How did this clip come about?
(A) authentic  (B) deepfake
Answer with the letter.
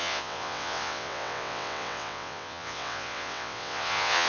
B